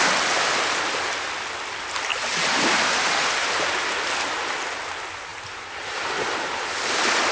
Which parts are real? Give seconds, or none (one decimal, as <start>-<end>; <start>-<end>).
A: 0.0-2.1; 3.7-5.3; 6.7-7.3